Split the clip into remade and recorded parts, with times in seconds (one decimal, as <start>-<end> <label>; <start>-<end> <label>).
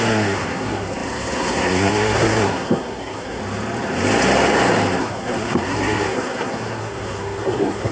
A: 0.0-3.4 remade; 3.4-5.0 recorded; 5.0-7.9 remade